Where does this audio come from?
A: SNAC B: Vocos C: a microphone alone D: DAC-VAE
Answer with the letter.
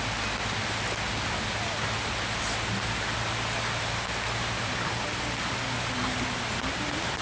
C